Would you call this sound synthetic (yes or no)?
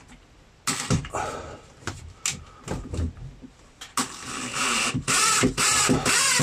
no